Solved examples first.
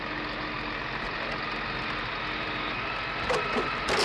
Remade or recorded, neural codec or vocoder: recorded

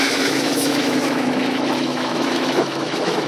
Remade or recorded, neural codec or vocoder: remade, autoencoder, DAC-VAE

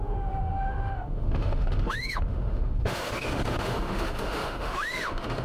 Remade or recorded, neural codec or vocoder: remade, autoencoder, DAC-VAE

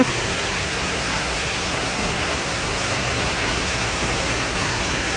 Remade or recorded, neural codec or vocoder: remade, codec, SNAC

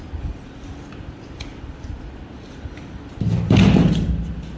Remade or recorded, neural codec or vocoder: remade, vocoder, BigVGAN v2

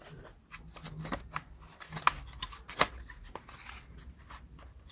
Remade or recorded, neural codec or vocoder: recorded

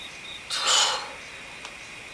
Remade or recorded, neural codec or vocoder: recorded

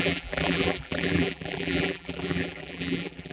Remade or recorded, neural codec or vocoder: remade, vocoder, BigVGAN v2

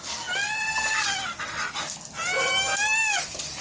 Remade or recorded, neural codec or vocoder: recorded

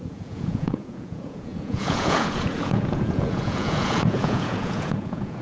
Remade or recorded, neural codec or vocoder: remade, vocoder, Vocos